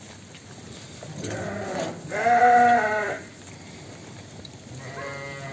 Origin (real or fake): real